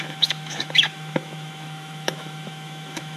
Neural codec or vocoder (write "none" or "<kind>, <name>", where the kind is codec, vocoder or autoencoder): autoencoder, DAC-VAE